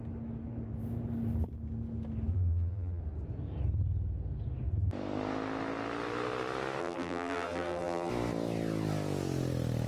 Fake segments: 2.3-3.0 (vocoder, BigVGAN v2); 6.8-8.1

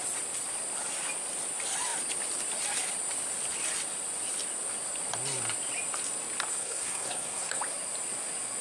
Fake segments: 6.5-7.6 (codec, SNAC)

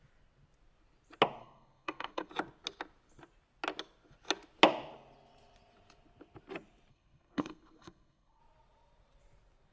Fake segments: 1.4-2.3 (codec, SNAC); 6.9-8.4

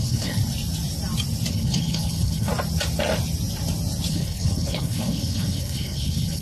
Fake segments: 0.0-0.4 (codec, HILCodec); 1.5-2.5; 4.1-6.4

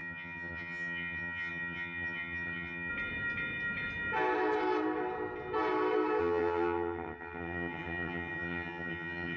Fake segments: 0.0-2.9 (vocoder, HiFi-GAN); 6.2-9.4

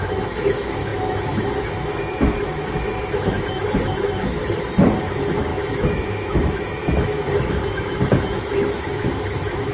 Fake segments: 0.0-4.4 (autoencoder, DAC-VAE); 5.1-9.7

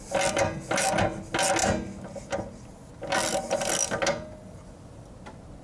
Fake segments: none

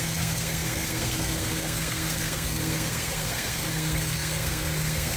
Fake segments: 0.0-5.2 (codec, SNAC)